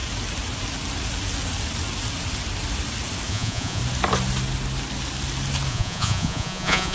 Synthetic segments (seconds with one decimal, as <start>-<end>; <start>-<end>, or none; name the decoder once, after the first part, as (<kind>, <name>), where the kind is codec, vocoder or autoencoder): 3.3-3.8 (vocoder, Vocos); 5.7-6.9